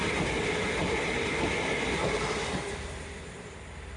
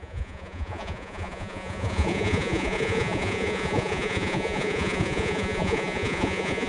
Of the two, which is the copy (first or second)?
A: second